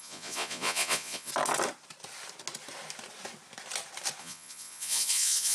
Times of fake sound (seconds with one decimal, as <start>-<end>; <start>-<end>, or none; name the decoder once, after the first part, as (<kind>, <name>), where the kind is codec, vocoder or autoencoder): 0.0-1.3 (vocoder, Vocos); 4.2-5.5